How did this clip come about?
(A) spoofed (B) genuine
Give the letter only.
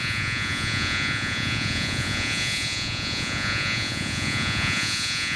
A